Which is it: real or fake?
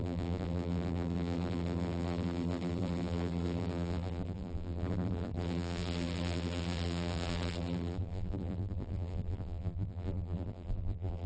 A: fake